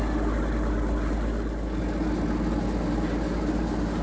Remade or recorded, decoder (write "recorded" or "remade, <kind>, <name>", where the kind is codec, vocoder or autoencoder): recorded